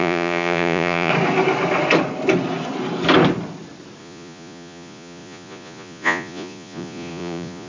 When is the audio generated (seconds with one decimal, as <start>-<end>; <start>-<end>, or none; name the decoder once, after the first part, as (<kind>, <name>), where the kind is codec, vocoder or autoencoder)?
0.0-1.1 (vocoder, Vocos); 4.0-7.7